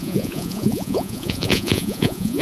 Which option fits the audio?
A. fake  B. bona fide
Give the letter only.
A